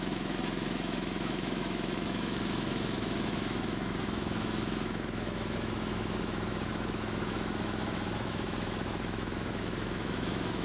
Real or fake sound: fake